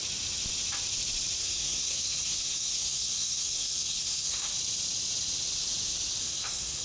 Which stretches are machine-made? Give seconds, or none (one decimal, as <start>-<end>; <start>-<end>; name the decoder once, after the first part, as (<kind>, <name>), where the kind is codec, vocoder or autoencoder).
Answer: 1.4-4.5 (codec, SNAC); 6.2-6.8